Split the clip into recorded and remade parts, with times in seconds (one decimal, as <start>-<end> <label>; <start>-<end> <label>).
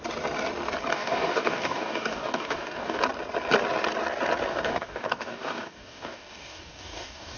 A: 0.0-0.9 recorded; 0.9-3.0 remade; 3.0-4.5 recorded; 4.5-7.4 remade